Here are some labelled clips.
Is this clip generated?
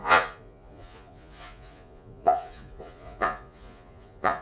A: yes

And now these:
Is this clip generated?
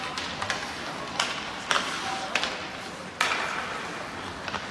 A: no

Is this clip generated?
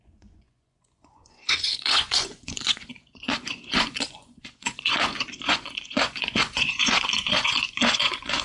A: yes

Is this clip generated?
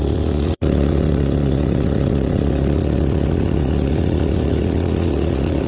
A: yes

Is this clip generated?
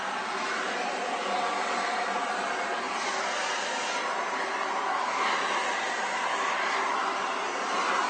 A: no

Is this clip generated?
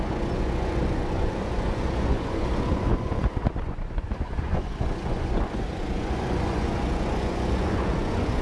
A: yes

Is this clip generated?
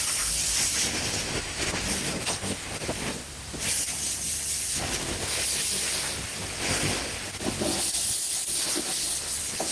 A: no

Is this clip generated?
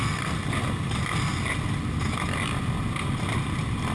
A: no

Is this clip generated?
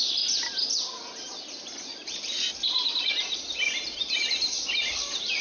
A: no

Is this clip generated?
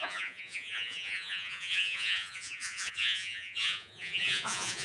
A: yes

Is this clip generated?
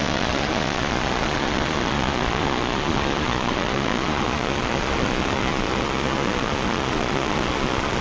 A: yes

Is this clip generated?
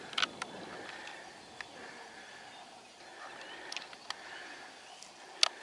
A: no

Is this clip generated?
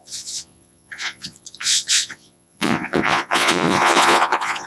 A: yes